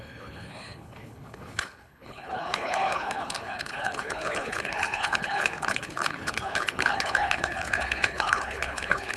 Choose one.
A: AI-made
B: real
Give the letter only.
A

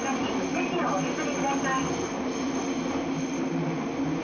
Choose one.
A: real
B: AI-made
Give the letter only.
A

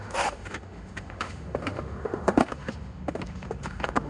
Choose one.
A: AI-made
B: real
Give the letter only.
A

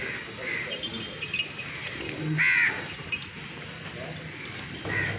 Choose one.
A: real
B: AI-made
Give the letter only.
B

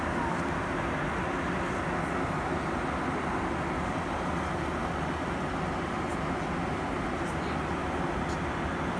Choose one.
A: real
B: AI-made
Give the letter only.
A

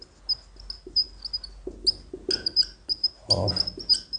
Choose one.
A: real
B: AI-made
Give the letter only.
A